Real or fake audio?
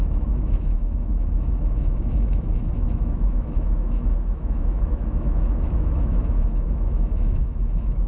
fake